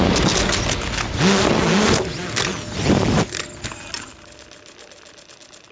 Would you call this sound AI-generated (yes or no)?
no